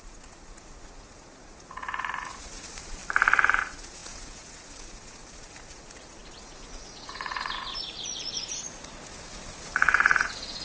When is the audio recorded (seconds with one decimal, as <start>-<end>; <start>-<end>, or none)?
3.0-3.6